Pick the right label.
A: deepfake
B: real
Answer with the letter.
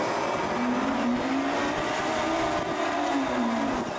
B